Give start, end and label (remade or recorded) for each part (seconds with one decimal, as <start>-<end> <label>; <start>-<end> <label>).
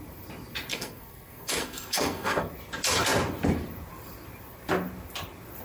0.0-0.7 recorded; 0.7-2.5 remade; 2.5-5.6 recorded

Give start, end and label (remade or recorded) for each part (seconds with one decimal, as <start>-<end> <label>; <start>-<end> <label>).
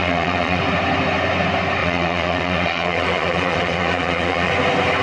0.0-0.6 remade; 0.6-1.8 recorded; 1.8-4.5 remade; 4.5-5.0 recorded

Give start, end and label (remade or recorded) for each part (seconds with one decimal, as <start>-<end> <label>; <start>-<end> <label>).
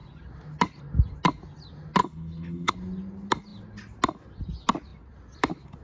0.0-2.0 recorded; 2.0-2.7 remade; 2.7-5.8 recorded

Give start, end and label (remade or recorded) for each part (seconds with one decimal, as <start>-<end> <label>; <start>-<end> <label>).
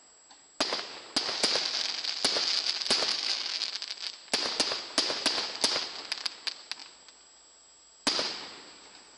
0.0-3.1 recorded; 3.1-3.7 remade; 3.7-9.2 recorded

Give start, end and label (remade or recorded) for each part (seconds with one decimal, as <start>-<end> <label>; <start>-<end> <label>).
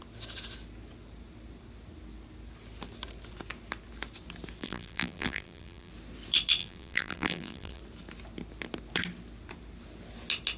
0.0-4.6 recorded; 4.6-5.9 remade; 5.9-6.6 recorded; 6.6-7.8 remade; 7.8-10.6 recorded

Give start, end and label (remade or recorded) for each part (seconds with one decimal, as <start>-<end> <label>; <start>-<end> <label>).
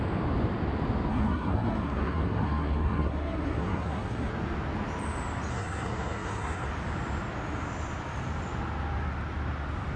0.0-1.1 recorded; 1.1-4.3 remade; 4.3-5.5 recorded; 5.5-6.7 remade; 6.7-10.0 recorded